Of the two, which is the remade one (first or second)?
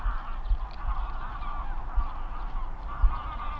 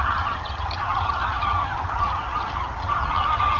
second